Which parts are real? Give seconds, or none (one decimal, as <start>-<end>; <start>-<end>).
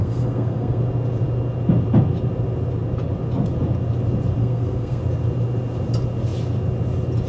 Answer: 0.8-4.4; 5.0-7.3